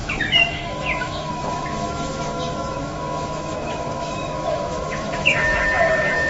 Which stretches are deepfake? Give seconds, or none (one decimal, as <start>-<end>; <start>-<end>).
0.0-6.3

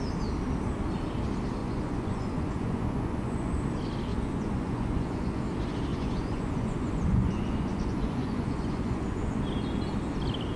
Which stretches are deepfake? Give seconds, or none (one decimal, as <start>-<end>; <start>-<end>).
1.6-3.6; 4.1-5.4; 5.9-9.4

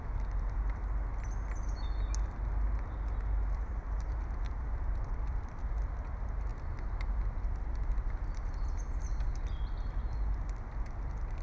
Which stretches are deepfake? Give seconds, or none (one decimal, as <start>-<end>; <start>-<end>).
0.0-0.8; 3.5-6.5; 7.1-11.4